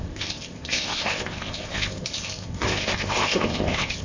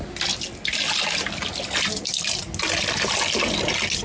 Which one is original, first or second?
second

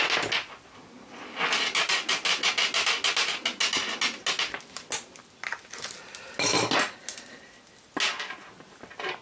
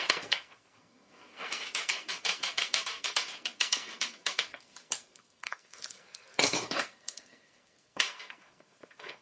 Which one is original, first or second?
first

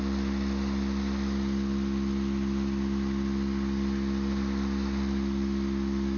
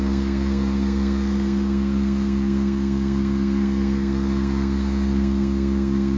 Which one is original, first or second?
first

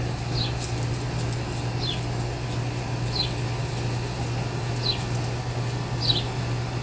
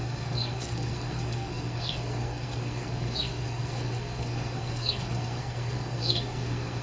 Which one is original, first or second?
first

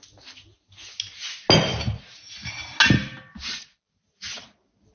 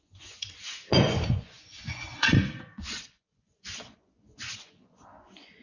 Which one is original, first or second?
first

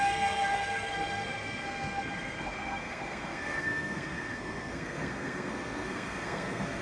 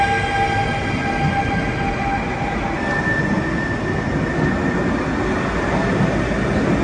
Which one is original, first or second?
second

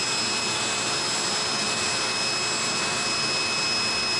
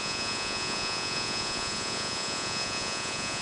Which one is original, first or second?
first